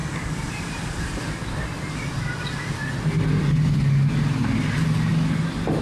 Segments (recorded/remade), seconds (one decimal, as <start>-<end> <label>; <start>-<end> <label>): 0.0-2.2 remade; 2.2-5.8 recorded